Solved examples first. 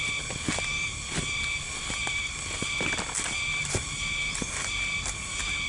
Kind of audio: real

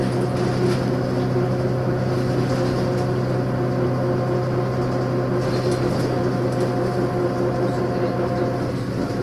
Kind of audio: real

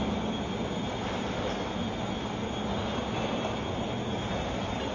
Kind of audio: real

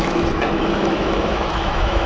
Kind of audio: fake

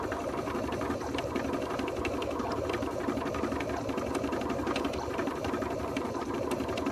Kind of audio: fake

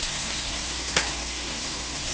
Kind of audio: fake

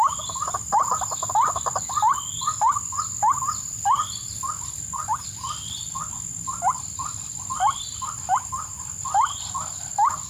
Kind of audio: real